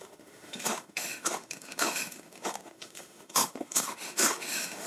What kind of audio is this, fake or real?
fake